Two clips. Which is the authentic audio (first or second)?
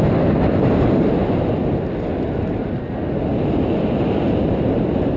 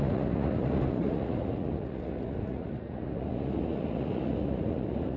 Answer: first